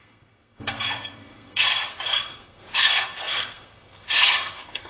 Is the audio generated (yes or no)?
yes